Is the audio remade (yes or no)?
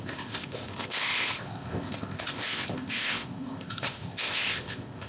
yes